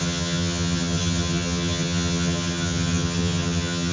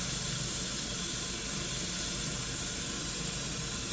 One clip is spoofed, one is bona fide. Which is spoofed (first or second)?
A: first